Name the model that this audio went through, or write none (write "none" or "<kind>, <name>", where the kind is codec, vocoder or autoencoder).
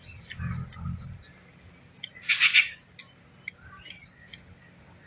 none